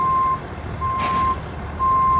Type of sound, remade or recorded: recorded